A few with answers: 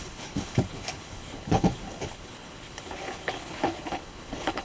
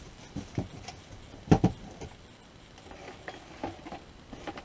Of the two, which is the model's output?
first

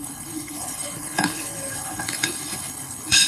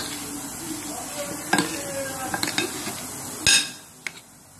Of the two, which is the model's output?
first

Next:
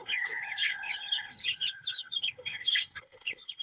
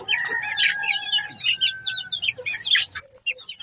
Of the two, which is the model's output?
first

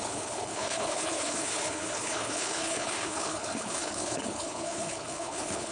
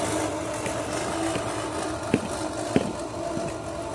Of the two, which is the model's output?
first